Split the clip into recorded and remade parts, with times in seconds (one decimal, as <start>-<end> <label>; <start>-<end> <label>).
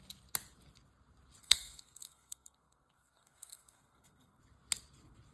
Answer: 0.0-1.4 recorded; 1.4-4.4 remade; 4.4-5.3 recorded